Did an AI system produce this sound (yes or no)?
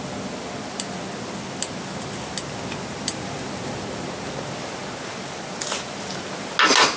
no